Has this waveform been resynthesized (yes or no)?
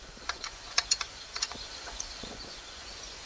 yes